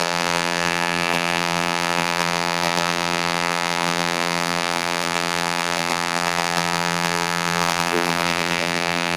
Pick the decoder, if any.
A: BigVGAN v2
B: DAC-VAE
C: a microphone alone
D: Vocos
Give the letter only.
A